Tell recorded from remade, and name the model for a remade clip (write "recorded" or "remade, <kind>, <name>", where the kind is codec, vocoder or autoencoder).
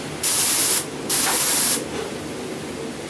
recorded